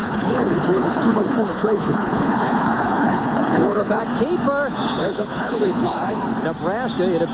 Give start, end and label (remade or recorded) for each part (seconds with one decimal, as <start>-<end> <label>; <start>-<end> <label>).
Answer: 0.0-4.0 remade; 4.0-5.0 recorded; 5.0-6.2 remade; 6.2-7.3 recorded